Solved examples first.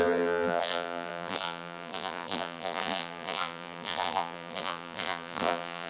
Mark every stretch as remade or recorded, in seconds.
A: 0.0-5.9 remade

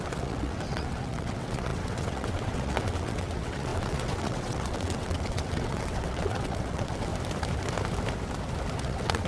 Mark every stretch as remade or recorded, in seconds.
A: 0.0-7.1 remade; 7.1-8.8 recorded; 8.8-9.3 remade

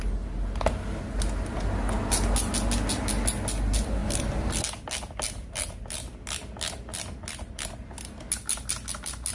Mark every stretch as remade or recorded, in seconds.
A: 0.0-9.3 recorded

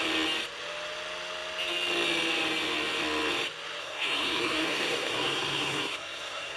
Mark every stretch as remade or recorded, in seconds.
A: 0.0-3.8 recorded; 3.8-6.6 remade

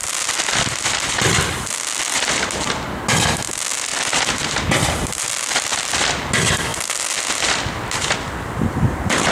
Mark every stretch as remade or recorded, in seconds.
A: 0.0-9.3 recorded

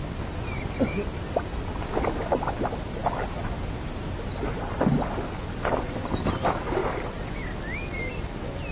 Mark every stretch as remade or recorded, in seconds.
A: 0.0-0.6 remade; 0.6-1.5 recorded; 1.5-2.2 remade; 2.2-6.8 recorded; 6.8-8.7 remade

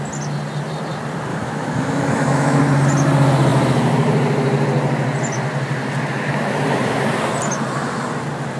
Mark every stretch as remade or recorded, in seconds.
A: 0.0-1.3 recorded; 1.3-2.6 remade; 2.6-8.6 recorded